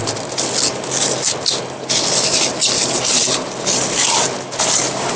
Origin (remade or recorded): recorded